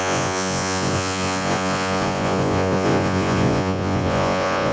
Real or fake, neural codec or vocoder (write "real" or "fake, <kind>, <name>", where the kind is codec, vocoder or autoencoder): fake, vocoder, Vocos